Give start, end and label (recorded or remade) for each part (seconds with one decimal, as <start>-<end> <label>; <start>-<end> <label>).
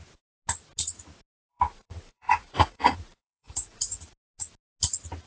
0.0-1.5 recorded; 1.5-4.0 remade; 4.0-5.3 recorded